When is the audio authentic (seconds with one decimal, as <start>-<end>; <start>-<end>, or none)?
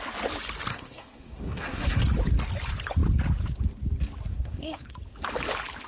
0.0-0.7; 2.0-4.3; 4.9-5.9